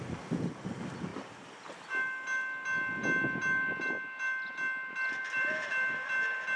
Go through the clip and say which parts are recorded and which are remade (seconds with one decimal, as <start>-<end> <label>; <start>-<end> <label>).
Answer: 0.0-1.1 recorded; 1.1-1.6 remade; 1.6-6.6 recorded